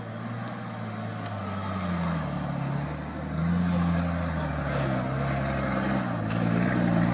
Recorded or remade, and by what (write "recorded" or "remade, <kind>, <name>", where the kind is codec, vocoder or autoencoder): recorded